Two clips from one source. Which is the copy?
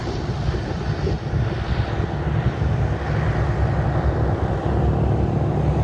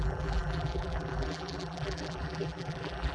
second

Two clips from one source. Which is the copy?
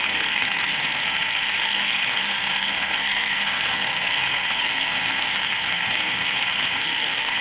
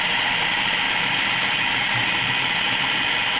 first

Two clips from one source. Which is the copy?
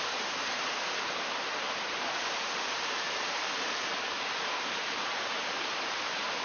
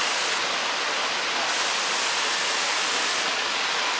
first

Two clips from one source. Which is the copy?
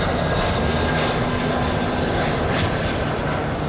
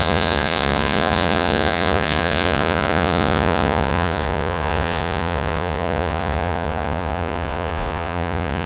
second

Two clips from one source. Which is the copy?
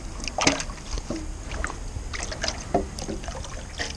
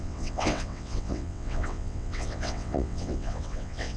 second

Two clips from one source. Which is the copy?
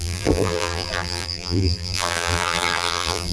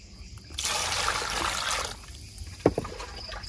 first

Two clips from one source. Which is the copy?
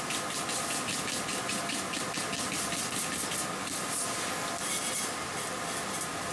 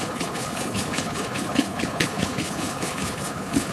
second